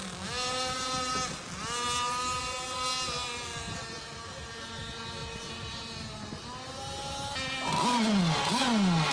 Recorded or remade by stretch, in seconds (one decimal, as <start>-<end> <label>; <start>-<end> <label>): 0.0-9.1 recorded